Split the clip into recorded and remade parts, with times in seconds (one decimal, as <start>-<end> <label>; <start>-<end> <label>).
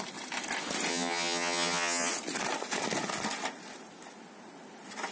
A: 0.0-0.9 recorded; 0.9-2.1 remade; 2.1-5.1 recorded